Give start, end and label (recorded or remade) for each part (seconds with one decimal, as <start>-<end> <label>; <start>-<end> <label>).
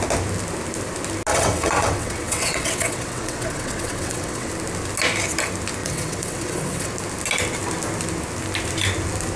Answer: 0.0-1.3 recorded; 1.3-4.5 remade; 4.5-5.8 recorded; 5.8-6.9 remade; 6.9-9.4 recorded